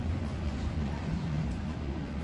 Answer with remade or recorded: remade